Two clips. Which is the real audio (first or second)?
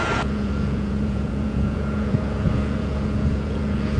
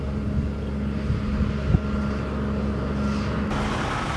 second